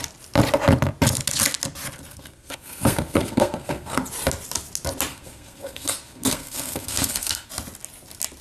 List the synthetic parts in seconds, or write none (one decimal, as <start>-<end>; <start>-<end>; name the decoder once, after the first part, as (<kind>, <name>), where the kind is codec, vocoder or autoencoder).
2.1-4.0 (codec, SNAC); 5.1-7.5